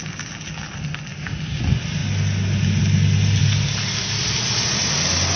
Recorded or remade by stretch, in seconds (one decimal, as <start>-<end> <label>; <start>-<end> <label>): 0.0-1.1 recorded; 1.1-1.6 remade; 1.6-5.4 recorded